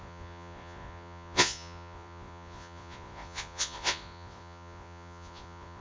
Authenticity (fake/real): fake